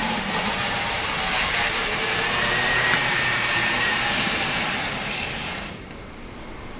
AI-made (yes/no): yes